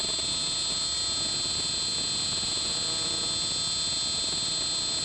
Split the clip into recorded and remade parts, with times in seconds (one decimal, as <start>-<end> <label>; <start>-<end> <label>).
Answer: 0.0-5.0 recorded